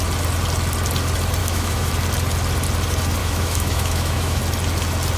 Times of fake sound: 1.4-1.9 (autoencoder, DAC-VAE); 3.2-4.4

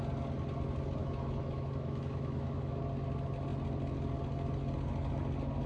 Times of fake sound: 1.0-2.8 (autoencoder, DAC-VAE)

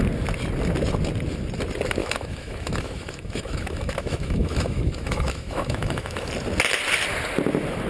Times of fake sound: 2.0-6.3 (autoencoder, DAC-VAE)

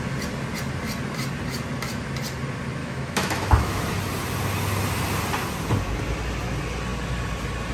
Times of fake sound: 2.8-3.8 (autoencoder, DAC-VAE)

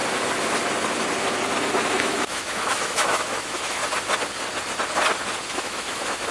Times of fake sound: 1.9-3.8 (autoencoder, DAC-VAE); 5.5-6.3